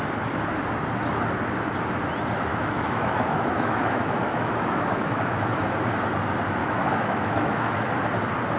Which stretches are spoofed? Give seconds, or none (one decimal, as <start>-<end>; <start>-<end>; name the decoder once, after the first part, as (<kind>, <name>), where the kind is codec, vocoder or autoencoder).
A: 2.5-5.7 (autoencoder, DAC-VAE); 6.6-7.9